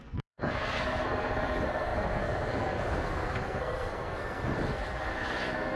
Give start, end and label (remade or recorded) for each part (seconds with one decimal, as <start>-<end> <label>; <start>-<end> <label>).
0.0-5.8 remade